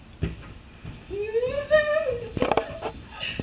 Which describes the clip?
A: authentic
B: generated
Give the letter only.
A